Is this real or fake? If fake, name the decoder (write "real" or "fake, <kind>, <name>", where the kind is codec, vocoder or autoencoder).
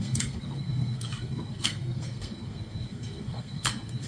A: fake, codec, SNAC